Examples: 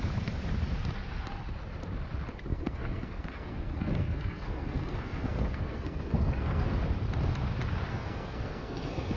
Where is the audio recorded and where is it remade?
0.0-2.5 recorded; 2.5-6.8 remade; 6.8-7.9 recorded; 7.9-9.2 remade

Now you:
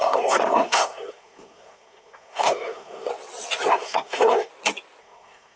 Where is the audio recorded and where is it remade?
0.0-3.1 remade; 3.1-3.7 recorded; 3.7-4.5 remade; 4.5-5.0 recorded; 5.0-5.6 remade

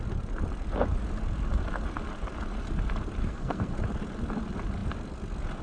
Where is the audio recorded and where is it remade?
0.0-3.2 recorded; 3.2-3.7 remade; 3.7-5.6 recorded

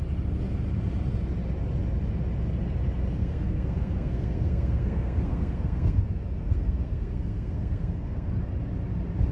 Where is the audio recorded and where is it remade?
0.0-3.2 recorded; 3.2-6.0 remade; 6.0-6.4 recorded; 6.4-8.3 remade; 8.3-9.3 recorded

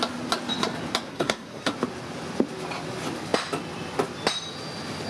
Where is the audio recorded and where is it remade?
0.0-1.1 recorded; 1.1-1.7 remade; 1.7-5.1 recorded

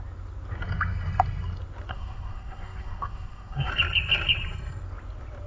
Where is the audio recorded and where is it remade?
0.0-1.9 recorded; 1.9-3.7 remade; 3.7-5.5 recorded

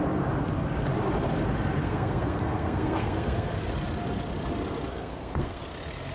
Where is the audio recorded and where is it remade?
0.0-1.8 recorded; 1.8-3.7 remade; 3.7-4.9 recorded; 4.9-5.6 remade; 5.6-6.1 recorded

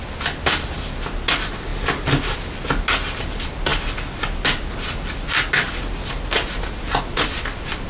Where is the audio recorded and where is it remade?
0.0-7.9 recorded